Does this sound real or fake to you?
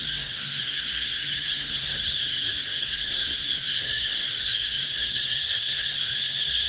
fake